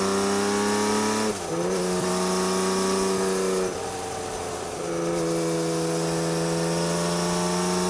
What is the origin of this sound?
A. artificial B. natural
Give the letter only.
B